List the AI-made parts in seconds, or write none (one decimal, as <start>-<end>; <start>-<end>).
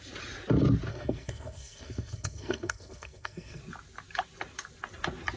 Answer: 0.9-3.6